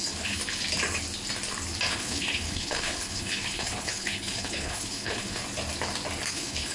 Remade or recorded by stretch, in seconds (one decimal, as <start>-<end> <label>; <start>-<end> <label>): 0.0-0.4 remade; 0.4-1.9 recorded; 1.9-5.4 remade; 5.4-6.3 recorded; 6.3-6.7 remade